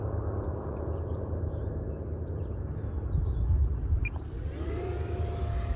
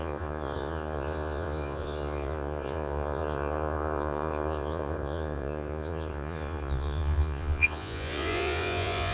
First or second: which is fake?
second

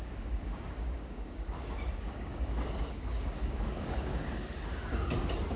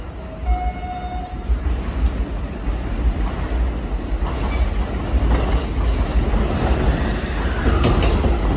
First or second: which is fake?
first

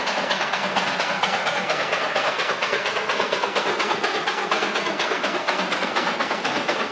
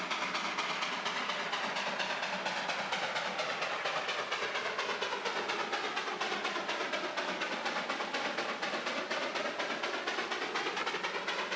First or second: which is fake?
first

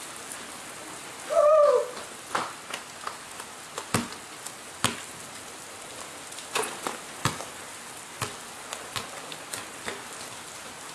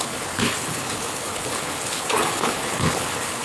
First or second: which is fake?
second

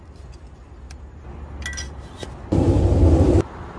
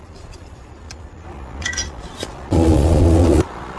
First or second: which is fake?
second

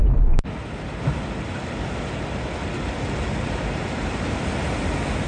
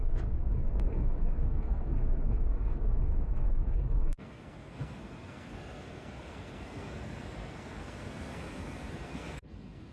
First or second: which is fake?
second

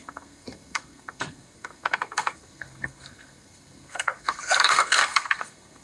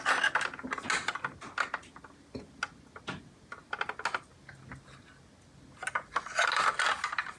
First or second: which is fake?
first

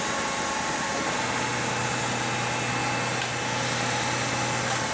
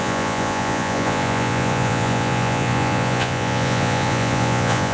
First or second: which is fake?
second